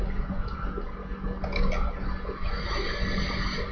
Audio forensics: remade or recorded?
recorded